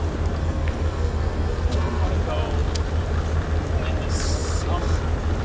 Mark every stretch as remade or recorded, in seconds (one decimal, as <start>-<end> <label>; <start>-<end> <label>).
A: 0.0-0.4 recorded; 0.4-2.1 remade; 2.1-5.4 recorded